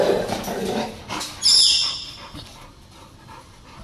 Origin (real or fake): real